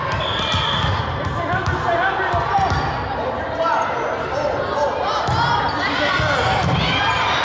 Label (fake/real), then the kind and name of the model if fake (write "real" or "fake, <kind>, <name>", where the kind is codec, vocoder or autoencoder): real